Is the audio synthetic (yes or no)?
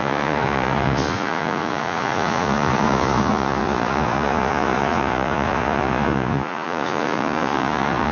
yes